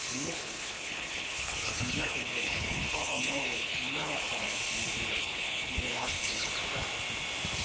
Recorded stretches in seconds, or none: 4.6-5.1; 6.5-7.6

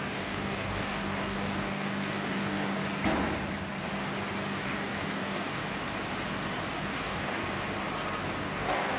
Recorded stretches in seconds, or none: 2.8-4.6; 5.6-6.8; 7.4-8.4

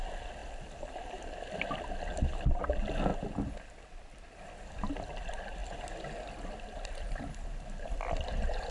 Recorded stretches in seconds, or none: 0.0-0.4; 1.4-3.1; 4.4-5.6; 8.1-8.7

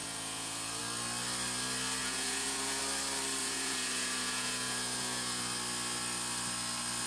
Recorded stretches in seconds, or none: 0.8-2.0; 2.8-3.4; 5.4-7.1